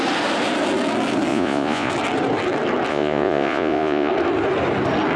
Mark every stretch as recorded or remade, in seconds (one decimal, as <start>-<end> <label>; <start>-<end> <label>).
0.0-1.3 recorded; 1.3-1.9 remade; 1.9-2.9 recorded; 2.9-4.1 remade; 4.1-5.2 recorded